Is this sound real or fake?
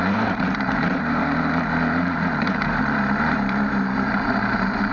fake